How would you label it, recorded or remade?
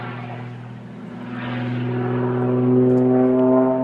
recorded